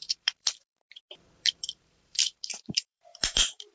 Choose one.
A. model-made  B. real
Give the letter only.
A